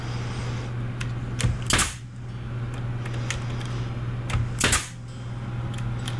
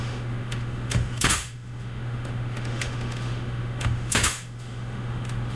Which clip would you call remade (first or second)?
second